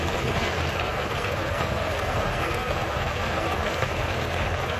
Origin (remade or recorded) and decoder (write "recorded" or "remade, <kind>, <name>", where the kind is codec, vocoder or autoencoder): remade, codec, SNAC